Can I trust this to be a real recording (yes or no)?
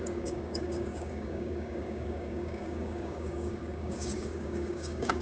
no